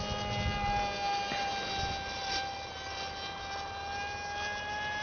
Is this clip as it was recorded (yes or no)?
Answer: yes